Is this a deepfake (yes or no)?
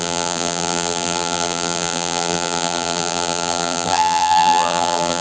yes